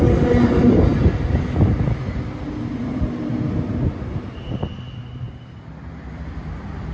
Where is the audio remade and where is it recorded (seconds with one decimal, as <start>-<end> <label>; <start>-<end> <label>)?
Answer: 0.0-6.9 recorded